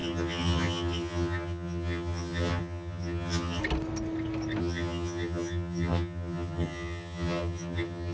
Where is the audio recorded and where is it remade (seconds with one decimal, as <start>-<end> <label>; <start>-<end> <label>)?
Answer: 0.0-3.6 remade; 3.6-4.6 recorded; 4.6-8.1 remade